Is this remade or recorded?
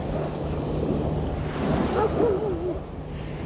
recorded